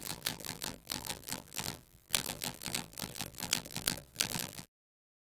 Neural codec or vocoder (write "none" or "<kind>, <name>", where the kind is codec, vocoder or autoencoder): vocoder, BigVGAN v2